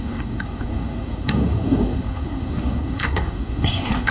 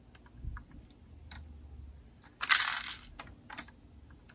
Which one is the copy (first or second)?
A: first